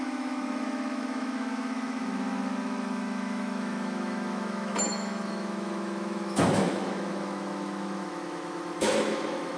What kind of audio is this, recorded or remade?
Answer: remade